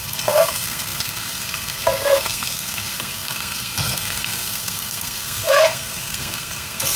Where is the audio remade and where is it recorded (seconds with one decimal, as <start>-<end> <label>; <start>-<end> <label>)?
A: 0.0-7.0 remade